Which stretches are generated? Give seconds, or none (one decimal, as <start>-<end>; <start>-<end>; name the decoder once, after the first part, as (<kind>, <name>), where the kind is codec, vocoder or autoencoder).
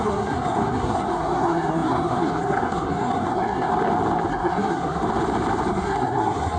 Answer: 0.0-3.7 (codec, SNAC); 4.3-5.0; 5.7-6.6